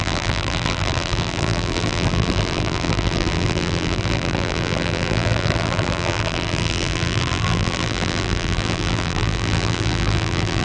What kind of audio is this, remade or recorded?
remade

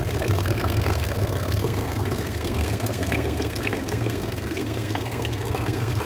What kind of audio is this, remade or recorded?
remade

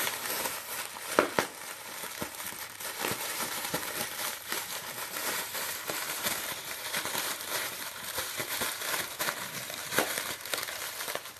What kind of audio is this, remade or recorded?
remade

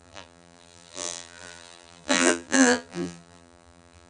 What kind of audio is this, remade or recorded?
remade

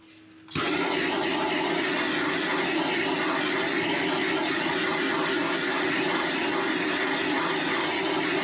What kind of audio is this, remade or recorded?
recorded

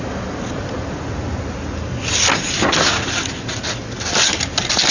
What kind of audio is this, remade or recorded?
recorded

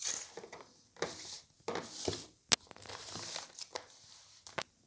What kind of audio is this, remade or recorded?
recorded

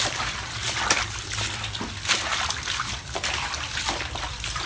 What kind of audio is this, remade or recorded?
remade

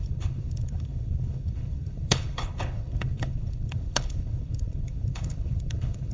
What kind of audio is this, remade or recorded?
remade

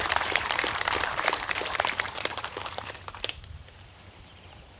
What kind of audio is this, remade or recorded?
remade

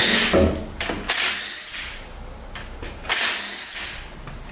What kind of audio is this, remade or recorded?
recorded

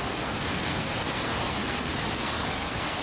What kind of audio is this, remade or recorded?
remade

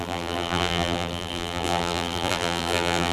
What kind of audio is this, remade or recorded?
remade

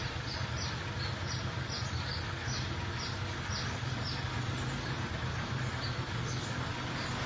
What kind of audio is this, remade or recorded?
recorded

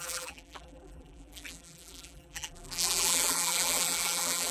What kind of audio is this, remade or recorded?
remade